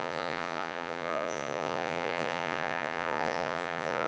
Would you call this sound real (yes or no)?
no